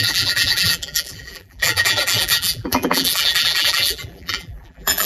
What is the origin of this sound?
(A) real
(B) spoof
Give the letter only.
B